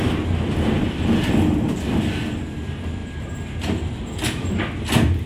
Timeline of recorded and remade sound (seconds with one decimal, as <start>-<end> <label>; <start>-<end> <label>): 0.0-3.0 recorded; 3.0-3.9 remade; 3.9-5.3 recorded